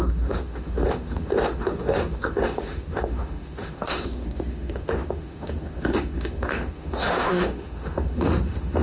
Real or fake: fake